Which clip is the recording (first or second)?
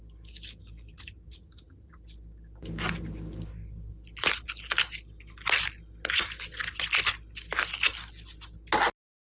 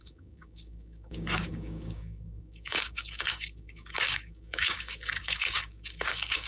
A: first